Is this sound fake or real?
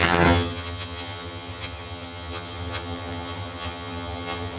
fake